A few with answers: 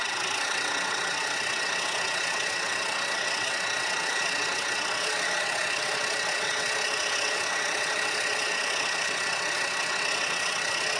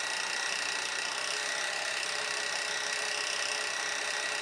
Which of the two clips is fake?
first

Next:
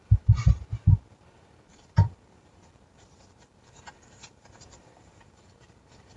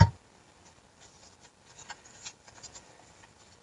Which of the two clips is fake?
first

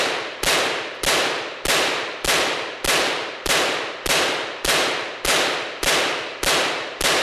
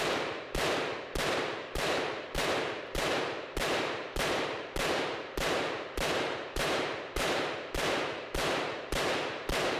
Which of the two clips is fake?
second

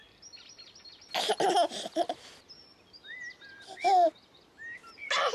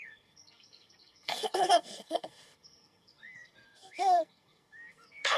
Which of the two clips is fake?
second